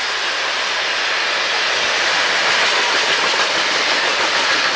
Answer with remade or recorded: recorded